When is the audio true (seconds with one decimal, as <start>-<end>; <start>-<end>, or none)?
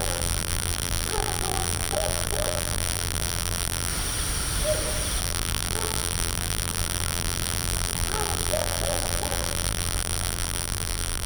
3.9-5.2